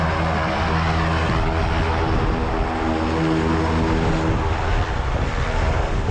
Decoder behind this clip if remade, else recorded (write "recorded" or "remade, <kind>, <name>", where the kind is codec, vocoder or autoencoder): recorded